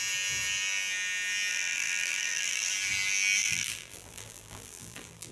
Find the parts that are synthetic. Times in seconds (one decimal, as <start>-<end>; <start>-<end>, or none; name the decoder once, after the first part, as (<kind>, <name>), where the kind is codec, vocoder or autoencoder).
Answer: 1.5-2.7 (vocoder, BigVGAN v2); 3.4-5.3